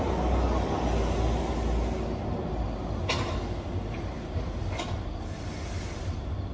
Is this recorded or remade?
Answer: recorded